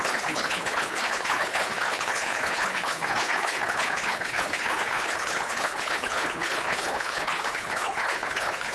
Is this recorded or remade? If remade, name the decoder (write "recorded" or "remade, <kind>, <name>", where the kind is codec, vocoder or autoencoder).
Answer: remade, codec, HILCodec